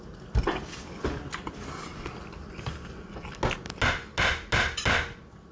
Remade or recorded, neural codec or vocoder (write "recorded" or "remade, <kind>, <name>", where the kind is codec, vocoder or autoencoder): recorded